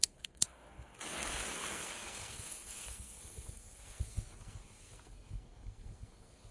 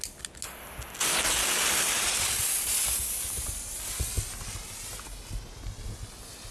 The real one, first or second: second